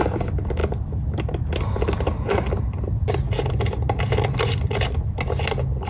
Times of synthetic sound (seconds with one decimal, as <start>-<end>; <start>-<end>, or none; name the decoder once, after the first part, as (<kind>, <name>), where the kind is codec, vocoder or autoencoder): none